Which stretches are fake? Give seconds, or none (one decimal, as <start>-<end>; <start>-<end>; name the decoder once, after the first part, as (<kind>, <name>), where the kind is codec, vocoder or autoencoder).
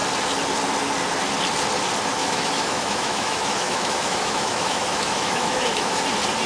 2.2-6.0 (autoencoder, DAC-VAE)